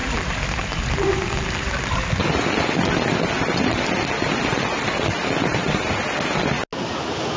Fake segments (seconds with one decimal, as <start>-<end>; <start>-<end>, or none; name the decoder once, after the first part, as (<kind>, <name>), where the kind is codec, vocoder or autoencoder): none